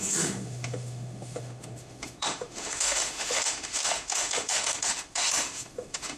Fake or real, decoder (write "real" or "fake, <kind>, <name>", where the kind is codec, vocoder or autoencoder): fake, autoencoder, DAC-VAE